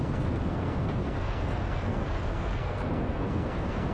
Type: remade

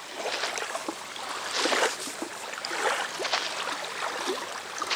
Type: recorded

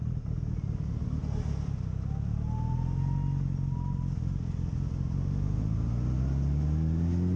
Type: recorded